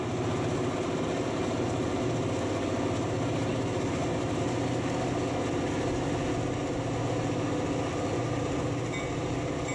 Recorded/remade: recorded